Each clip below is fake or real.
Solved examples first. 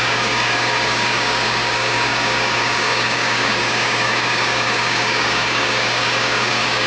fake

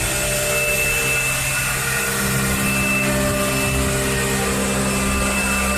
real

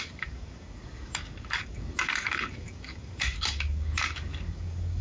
fake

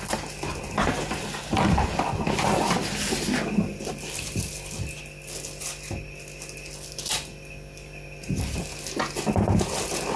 real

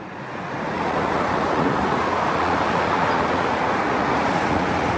fake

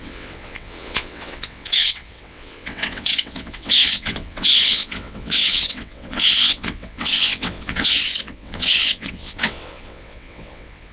fake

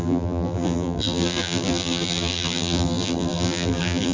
fake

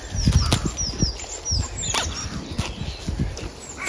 real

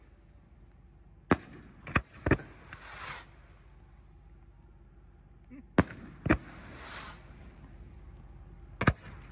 real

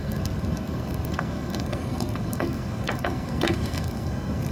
fake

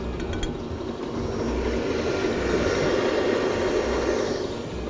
real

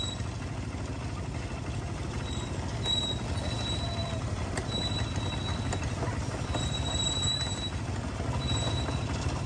real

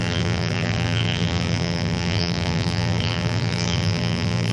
fake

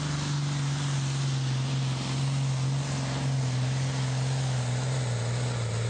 real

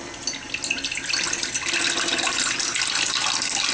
real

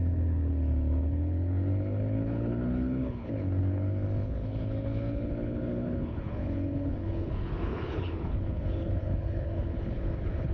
fake